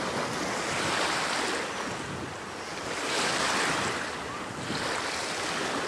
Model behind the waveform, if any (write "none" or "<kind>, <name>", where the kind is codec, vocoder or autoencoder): none